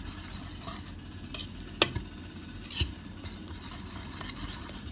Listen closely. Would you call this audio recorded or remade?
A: recorded